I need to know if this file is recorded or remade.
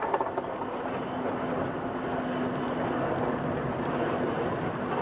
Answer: recorded